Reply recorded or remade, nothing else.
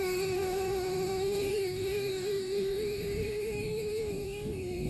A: remade